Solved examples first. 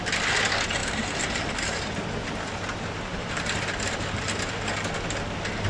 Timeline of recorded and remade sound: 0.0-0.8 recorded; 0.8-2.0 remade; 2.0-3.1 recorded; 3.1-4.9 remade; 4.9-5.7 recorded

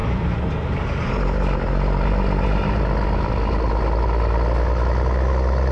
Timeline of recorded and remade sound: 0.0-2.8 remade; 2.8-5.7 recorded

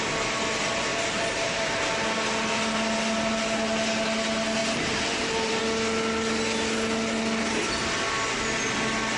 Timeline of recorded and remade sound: 0.0-0.9 recorded; 0.9-1.9 remade; 1.9-4.6 recorded; 4.6-5.6 remade; 5.6-9.2 recorded

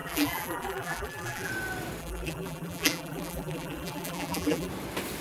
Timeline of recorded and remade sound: 0.0-1.5 remade; 1.5-2.0 recorded; 2.0-4.7 remade; 4.7-5.2 recorded